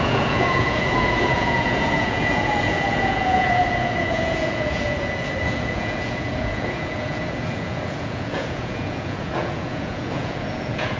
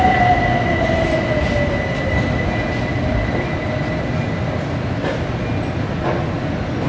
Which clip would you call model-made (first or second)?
first